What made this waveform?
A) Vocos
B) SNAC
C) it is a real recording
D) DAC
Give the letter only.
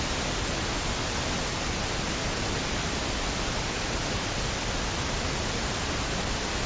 C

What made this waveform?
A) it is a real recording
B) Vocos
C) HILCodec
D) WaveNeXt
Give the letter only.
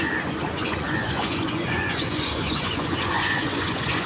B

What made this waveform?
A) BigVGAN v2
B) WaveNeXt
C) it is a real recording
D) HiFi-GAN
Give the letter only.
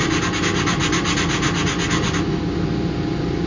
C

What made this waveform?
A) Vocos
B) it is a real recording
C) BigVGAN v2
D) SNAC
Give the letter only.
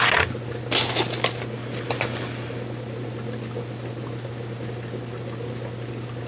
B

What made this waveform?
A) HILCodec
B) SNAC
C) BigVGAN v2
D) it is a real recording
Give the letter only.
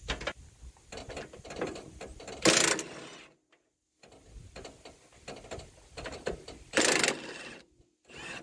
D